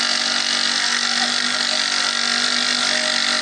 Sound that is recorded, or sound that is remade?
recorded